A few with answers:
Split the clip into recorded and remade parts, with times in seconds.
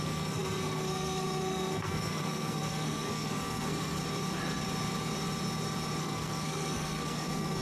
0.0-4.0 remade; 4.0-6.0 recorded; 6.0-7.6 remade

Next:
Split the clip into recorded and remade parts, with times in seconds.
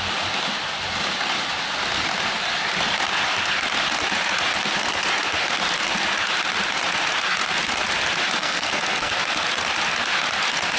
0.0-8.4 recorded; 8.4-9.1 remade; 9.1-10.8 recorded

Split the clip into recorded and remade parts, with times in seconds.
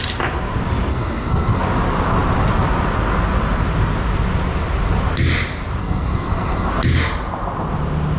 0.0-0.9 recorded; 0.9-1.6 remade; 1.6-5.8 recorded; 5.8-6.7 remade; 6.7-8.2 recorded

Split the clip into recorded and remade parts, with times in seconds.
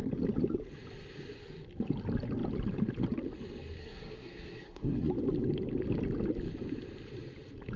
0.0-3.8 recorded; 3.8-5.1 remade; 5.1-7.8 recorded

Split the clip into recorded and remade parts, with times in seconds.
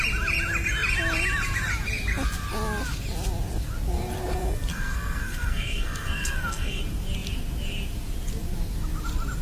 0.0-4.7 recorded; 4.7-6.8 remade; 6.8-9.4 recorded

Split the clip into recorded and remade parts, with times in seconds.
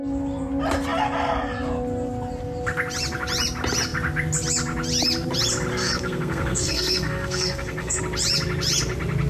0.0-5.7 recorded; 5.7-8.0 remade; 8.0-9.3 recorded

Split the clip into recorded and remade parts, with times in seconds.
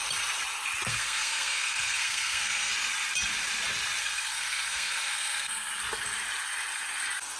0.0-0.9 recorded; 0.9-2.7 remade; 2.7-4.0 recorded; 4.0-5.7 remade; 5.7-7.4 recorded